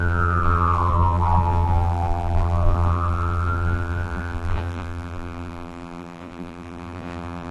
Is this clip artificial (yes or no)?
yes